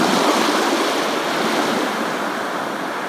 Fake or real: real